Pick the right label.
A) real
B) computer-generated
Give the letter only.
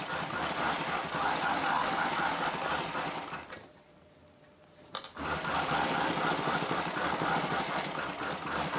A